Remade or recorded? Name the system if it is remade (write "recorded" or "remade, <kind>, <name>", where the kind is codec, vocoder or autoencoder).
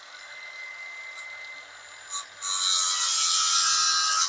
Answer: recorded